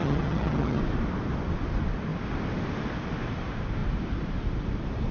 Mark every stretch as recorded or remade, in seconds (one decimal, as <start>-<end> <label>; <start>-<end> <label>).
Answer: 0.0-0.8 remade; 0.8-5.1 recorded